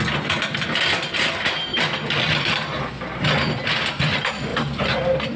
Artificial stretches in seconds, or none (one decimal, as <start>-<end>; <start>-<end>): none